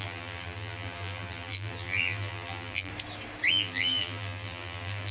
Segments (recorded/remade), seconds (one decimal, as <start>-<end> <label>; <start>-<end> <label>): 0.0-2.9 remade; 2.9-3.5 recorded; 3.5-5.1 remade